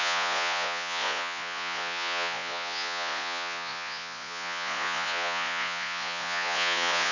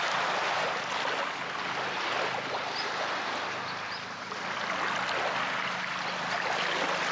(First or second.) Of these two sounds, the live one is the second